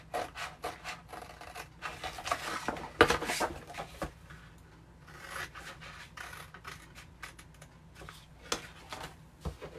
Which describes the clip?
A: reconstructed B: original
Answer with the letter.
B